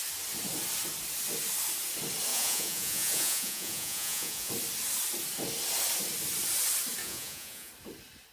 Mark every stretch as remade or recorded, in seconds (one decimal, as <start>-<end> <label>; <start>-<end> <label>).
0.0-2.3 recorded; 2.3-4.5 remade; 4.5-7.0 recorded; 7.0-7.7 remade; 7.7-8.3 recorded